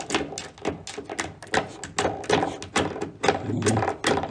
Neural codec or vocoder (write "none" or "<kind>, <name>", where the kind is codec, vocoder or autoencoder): none